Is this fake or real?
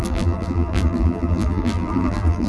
fake